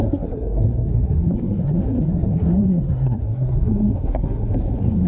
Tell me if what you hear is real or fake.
fake